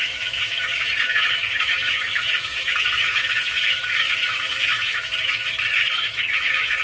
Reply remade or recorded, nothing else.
remade